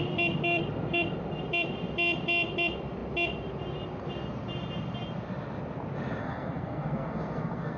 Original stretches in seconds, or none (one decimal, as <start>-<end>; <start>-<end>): 0.0-6.2